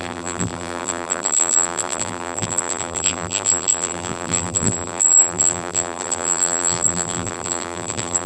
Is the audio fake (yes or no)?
yes